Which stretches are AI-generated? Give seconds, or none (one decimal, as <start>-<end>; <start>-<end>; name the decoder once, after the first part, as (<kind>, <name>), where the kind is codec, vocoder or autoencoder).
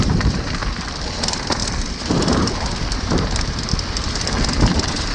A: 0.0-0.6 (vocoder, BigVGAN v2); 1.2-1.6; 3.0-3.7; 4.4-5.1